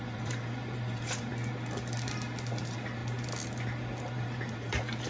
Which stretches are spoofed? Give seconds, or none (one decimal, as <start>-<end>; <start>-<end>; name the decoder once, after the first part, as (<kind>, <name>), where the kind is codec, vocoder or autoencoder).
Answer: 0.0-1.3 (vocoder, BigVGAN v2); 2.6-3.0; 4.0-5.1